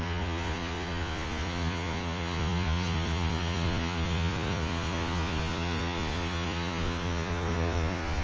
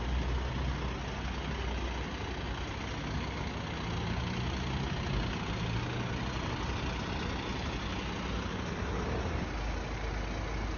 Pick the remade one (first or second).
first